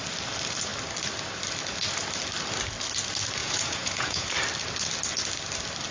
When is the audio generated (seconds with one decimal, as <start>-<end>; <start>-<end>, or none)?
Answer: 3.4-4.3